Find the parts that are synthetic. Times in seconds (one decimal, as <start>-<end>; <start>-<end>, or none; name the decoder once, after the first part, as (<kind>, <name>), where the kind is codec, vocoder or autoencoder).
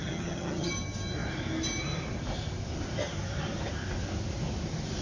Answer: 0.0-0.7 (vocoder, HiFi-GAN)